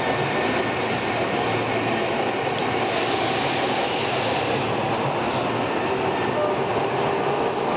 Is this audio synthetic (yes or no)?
no